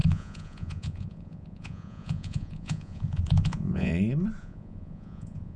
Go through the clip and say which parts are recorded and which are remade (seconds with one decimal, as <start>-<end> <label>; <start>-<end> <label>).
0.0-3.9 remade; 3.9-4.4 recorded; 4.4-5.6 remade